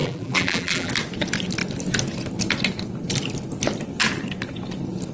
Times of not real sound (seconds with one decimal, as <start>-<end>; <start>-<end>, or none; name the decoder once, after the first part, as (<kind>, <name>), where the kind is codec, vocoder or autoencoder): 0.0-0.9 (vocoder, BigVGAN v2)